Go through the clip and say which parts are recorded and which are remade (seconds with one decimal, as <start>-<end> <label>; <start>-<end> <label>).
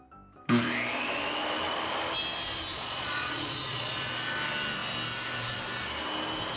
0.0-2.7 recorded; 2.7-4.1 remade; 4.1-6.6 recorded